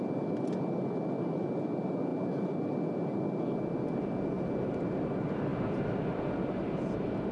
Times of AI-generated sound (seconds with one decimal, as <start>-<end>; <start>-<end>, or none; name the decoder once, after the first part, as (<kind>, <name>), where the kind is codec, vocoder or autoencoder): none

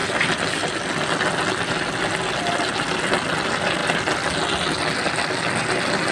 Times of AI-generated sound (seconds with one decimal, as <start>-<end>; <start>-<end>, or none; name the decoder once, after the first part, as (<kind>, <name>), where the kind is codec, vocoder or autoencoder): none

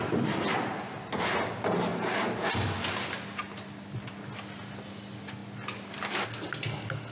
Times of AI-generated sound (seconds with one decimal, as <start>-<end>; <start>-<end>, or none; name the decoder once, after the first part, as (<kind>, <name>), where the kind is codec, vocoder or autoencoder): none

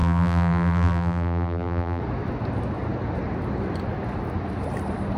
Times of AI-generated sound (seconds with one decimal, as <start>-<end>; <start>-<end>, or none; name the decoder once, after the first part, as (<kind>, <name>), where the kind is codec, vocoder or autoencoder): 0.0-2.0 (vocoder, BigVGAN v2)